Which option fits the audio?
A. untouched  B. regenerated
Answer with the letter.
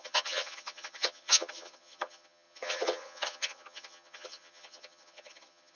B